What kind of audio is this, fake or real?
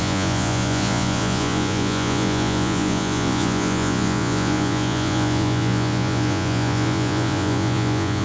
fake